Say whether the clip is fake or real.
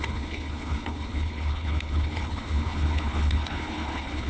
fake